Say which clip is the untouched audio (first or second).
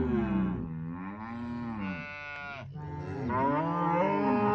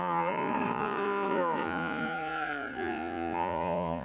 first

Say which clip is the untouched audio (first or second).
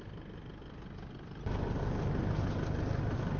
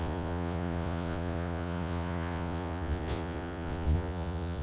first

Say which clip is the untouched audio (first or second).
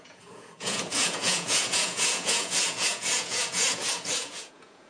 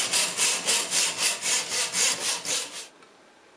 second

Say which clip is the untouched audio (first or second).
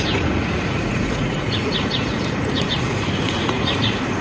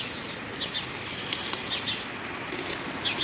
second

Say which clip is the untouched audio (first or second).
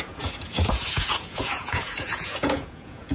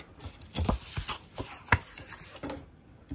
second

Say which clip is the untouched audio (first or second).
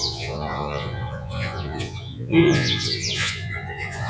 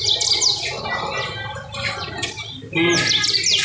second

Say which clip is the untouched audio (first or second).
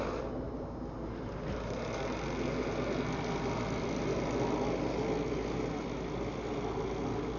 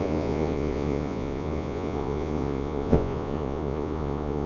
first